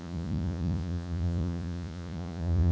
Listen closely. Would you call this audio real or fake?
fake